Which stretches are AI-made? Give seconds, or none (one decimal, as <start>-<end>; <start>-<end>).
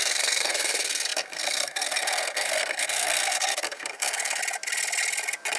0.0-4.4